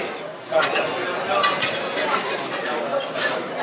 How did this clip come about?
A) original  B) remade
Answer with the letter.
A